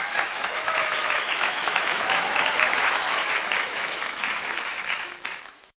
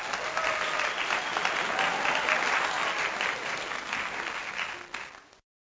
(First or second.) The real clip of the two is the second